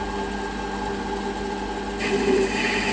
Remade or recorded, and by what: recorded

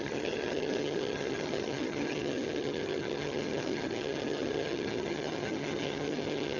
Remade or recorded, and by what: remade, vocoder, HiFi-GAN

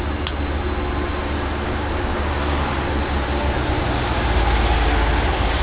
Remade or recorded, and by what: recorded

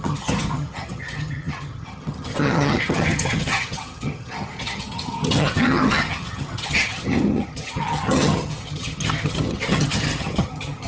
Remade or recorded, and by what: remade, vocoder, HiFi-GAN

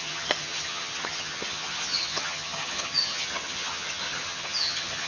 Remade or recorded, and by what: remade, vocoder, HiFi-GAN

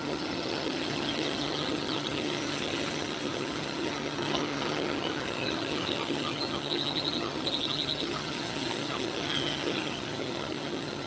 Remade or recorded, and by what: remade, vocoder, HiFi-GAN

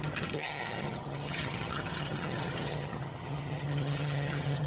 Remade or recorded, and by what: remade, vocoder, HiFi-GAN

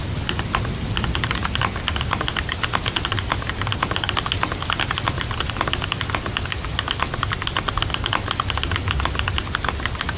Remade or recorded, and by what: recorded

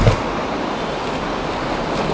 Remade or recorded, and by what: recorded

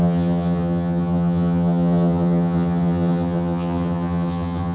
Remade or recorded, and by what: remade, vocoder, HiFi-GAN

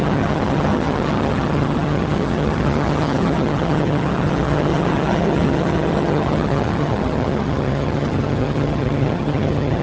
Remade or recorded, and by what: remade, vocoder, HiFi-GAN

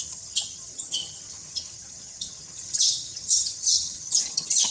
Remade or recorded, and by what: remade, vocoder, HiFi-GAN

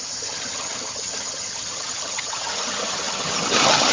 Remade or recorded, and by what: remade, vocoder, HiFi-GAN